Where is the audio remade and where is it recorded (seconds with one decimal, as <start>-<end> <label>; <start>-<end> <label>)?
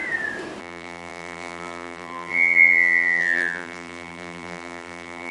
0.0-0.6 recorded; 0.6-5.3 remade